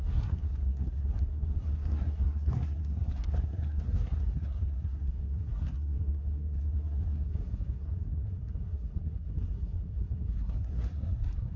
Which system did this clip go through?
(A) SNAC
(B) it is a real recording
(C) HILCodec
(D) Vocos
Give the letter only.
A